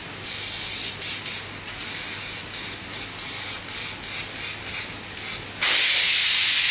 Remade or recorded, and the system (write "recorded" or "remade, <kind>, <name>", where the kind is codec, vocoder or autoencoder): recorded